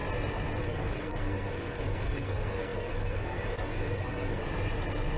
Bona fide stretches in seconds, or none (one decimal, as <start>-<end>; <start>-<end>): 0.0-0.6; 4.4-5.2